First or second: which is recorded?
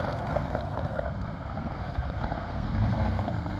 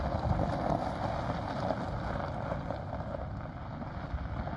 second